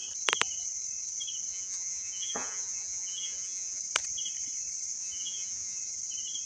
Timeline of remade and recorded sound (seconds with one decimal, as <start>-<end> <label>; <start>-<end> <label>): 0.0-1.5 recorded; 1.5-3.8 remade; 3.8-5.0 recorded; 5.0-5.8 remade; 5.8-6.5 recorded